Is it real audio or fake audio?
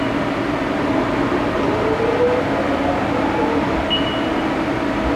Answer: real